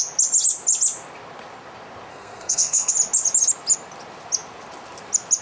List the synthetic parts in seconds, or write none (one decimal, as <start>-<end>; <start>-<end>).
2.1-2.9